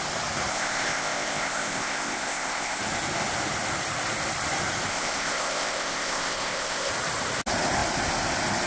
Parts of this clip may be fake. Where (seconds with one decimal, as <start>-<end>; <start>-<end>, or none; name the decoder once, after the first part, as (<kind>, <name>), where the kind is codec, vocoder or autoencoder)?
0.5-2.8 (codec, ZipCodec); 4.9-6.9